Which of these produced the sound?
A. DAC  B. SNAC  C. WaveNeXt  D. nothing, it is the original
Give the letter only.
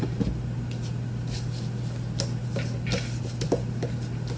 D